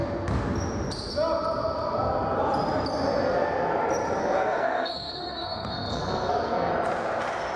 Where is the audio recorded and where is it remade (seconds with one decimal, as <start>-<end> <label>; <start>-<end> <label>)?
0.0-4.2 recorded; 4.2-6.7 remade; 6.7-7.6 recorded